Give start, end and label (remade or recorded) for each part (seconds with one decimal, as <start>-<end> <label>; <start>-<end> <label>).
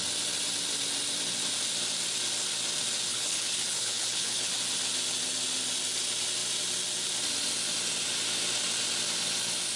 0.0-3.1 recorded; 3.1-4.5 remade; 4.5-9.8 recorded